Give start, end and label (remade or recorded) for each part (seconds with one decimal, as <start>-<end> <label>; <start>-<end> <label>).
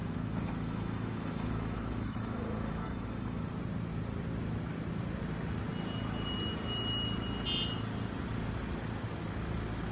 0.0-3.5 remade; 3.5-9.9 recorded